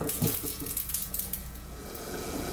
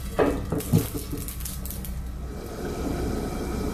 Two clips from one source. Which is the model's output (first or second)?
first